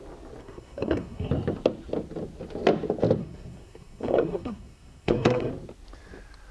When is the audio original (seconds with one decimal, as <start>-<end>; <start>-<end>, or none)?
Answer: 0.0-0.4; 1.3-3.2; 5.5-6.5